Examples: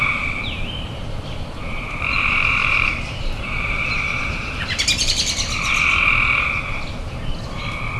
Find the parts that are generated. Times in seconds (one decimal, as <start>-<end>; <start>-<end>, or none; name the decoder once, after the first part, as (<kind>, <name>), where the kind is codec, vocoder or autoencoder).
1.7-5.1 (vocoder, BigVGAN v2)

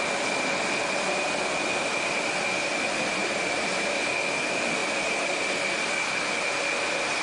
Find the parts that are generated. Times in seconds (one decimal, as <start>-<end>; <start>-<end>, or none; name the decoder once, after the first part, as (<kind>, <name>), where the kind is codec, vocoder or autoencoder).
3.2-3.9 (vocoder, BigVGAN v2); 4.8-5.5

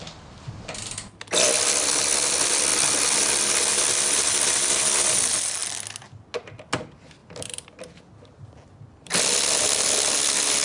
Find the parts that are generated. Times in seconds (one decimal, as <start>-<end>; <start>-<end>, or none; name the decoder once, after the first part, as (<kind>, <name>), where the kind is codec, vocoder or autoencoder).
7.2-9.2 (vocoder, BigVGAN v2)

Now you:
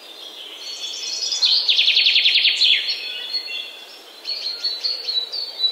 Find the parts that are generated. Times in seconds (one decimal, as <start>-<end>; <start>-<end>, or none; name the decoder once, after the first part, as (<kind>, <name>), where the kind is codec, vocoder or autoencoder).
3.4-5.7 (vocoder, BigVGAN v2)

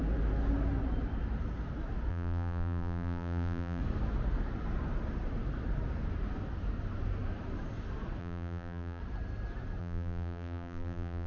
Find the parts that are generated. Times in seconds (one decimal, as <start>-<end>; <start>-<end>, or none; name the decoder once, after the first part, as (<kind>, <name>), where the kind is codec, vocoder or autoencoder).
2.1-3.8 (vocoder, BigVGAN v2); 8.2-9.0; 9.8-11.3

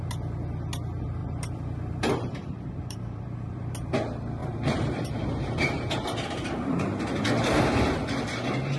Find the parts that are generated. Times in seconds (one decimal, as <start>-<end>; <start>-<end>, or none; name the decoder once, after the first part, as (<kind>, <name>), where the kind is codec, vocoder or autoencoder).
1.2-3.7 (vocoder, BigVGAN v2); 4.4-8.1